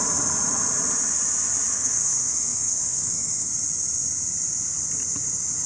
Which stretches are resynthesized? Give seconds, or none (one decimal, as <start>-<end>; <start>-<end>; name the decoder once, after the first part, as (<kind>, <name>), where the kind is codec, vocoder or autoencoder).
1.7-3.5 (codec, SNAC)

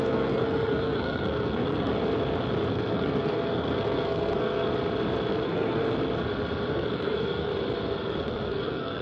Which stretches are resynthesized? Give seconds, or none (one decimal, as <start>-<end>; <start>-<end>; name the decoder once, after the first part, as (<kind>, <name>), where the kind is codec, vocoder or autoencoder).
0.0-1.9 (codec, SNAC); 2.7-4.7; 5.3-5.8; 6.7-7.5; 8.2-9.0

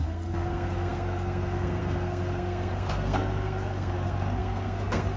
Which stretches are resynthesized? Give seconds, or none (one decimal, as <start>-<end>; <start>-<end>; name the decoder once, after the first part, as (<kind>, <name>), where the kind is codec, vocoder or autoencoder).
0.0-5.2 (codec, SNAC)

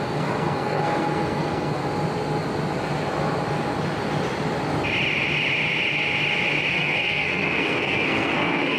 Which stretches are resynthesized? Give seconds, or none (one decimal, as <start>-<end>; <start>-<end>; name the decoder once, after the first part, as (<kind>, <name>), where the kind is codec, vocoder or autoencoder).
0.0-1.8 (codec, SNAC); 6.7-8.8

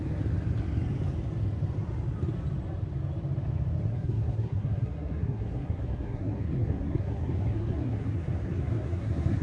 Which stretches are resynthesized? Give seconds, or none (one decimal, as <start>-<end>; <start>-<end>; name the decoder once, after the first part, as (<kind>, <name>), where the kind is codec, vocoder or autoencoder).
3.9-9.4 (codec, SNAC)

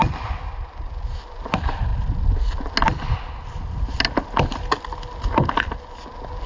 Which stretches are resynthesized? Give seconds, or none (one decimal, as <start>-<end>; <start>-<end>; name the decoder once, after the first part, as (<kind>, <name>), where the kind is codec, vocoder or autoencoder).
none